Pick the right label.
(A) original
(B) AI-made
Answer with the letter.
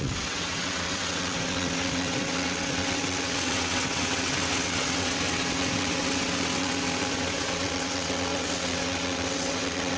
B